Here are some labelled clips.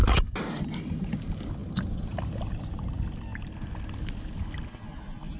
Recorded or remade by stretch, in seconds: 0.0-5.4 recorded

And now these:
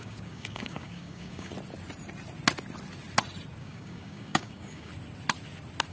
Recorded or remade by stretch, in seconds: 0.0-1.5 remade; 1.5-3.6 recorded; 3.6-4.9 remade; 4.9-5.9 recorded

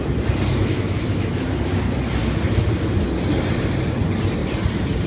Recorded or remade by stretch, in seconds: 0.0-0.5 recorded; 0.5-1.7 remade; 1.7-5.1 recorded

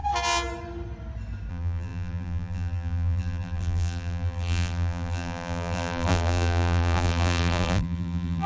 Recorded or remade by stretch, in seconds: 0.0-1.5 recorded; 1.5-8.5 remade

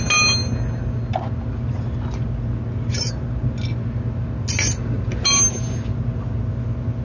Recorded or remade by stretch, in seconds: 0.0-7.0 recorded

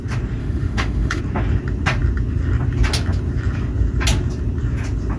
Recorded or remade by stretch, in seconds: 0.0-0.4 recorded; 0.4-1.2 remade; 1.2-5.2 recorded

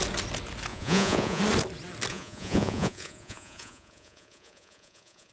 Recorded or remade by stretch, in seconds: 0.0-0.7 recorded; 0.7-1.4 remade; 1.4-2.1 recorded; 2.1-5.3 remade

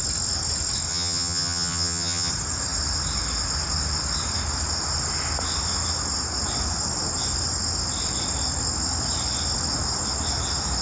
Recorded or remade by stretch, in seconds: 0.0-0.9 recorded; 0.9-2.3 remade; 2.3-10.8 recorded